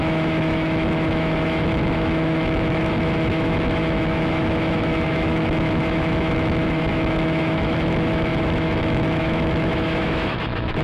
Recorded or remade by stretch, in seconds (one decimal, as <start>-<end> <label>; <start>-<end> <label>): 0.0-10.8 remade